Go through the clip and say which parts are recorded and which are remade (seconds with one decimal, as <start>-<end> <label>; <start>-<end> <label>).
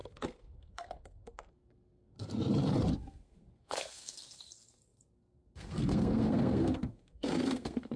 0.0-2.3 remade; 2.3-2.9 recorded; 2.9-8.0 remade